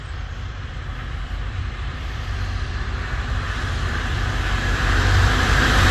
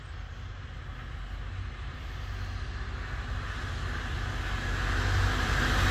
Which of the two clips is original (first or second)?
second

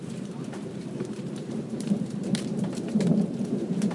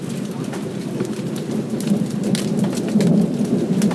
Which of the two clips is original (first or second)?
second